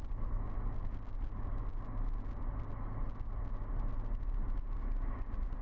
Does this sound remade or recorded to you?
recorded